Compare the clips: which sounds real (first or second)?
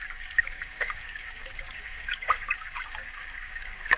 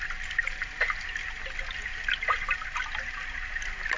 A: second